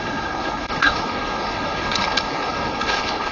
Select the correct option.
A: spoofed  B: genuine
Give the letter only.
A